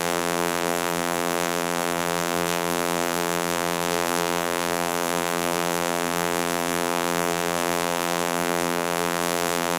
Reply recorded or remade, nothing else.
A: remade